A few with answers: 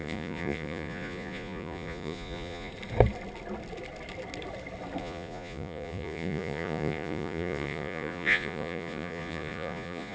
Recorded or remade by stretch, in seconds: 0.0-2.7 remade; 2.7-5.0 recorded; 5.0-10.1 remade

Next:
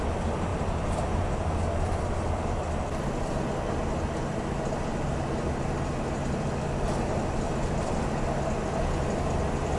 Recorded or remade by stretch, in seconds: 0.0-9.8 recorded

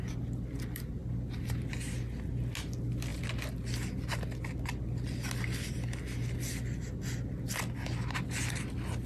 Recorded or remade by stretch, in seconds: 0.0-9.1 recorded

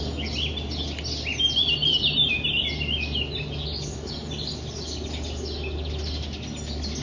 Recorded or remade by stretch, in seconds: 0.0-7.0 recorded